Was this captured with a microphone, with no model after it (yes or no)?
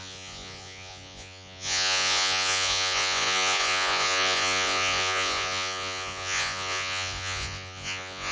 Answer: no